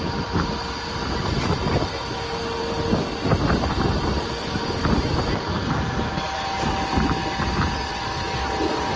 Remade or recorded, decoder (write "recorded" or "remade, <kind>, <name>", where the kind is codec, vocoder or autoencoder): recorded